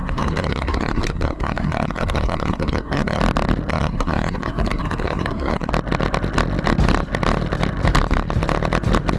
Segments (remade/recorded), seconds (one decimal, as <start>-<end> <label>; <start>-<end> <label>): 0.0-3.2 remade; 3.2-3.7 recorded; 3.7-5.7 remade; 5.7-9.2 recorded